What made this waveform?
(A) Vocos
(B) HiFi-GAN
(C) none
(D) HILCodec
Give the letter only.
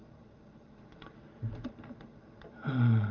C